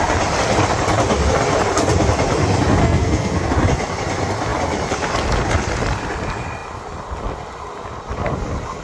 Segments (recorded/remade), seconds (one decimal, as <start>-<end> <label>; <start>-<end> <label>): 0.0-2.8 recorded; 2.8-3.5 remade; 3.5-8.8 recorded